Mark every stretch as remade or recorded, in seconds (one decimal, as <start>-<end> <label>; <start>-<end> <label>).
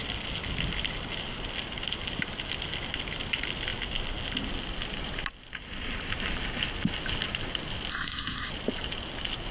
0.0-7.9 recorded; 7.9-8.5 remade; 8.5-9.5 recorded